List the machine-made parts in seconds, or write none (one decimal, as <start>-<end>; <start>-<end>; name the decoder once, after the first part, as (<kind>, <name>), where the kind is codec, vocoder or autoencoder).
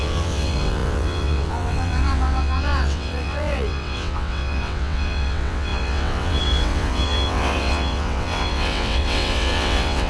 0.0-10.1 (vocoder, WaveNeXt)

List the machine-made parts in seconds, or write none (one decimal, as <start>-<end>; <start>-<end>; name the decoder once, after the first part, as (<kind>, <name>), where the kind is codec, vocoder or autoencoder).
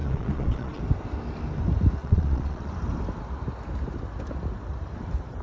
0.0-0.8 (vocoder, Vocos); 2.0-2.7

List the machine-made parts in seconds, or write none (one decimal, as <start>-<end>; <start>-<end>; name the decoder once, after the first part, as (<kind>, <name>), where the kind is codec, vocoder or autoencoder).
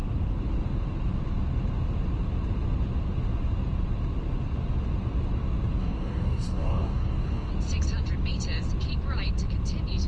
5.8-7.5 (codec, DAC)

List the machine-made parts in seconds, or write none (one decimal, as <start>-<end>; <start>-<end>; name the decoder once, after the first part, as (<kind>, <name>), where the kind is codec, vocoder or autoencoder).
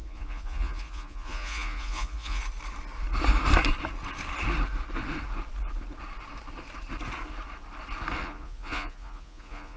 0.0-2.4 (vocoder, Vocos); 8.2-9.8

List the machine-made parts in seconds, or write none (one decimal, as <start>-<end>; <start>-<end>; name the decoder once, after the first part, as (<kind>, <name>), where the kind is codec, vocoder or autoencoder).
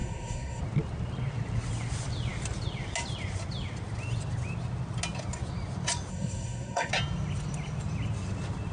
0.0-0.6 (codec, SNAC); 6.1-6.9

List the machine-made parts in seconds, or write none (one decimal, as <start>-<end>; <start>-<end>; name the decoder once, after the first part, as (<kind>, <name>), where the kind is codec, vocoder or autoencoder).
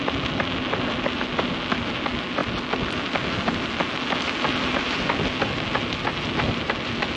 none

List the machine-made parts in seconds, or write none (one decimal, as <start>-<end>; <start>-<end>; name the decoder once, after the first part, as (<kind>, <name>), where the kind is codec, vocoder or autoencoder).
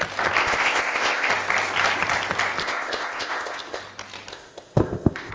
0.4-1.3 (codec, ZipCodec); 2.6-3.8; 4.3-5.3